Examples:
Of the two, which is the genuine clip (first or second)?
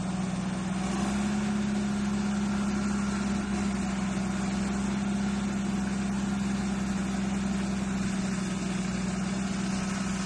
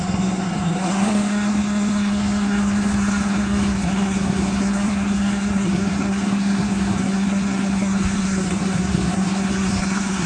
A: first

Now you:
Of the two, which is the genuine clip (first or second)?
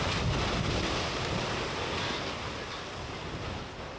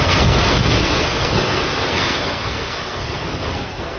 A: first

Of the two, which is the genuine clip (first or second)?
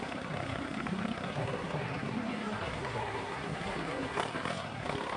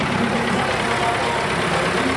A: second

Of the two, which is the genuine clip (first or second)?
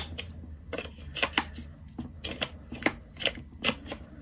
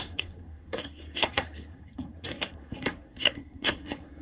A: first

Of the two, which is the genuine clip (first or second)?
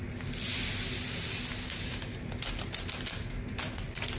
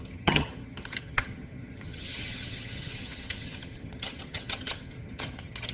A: first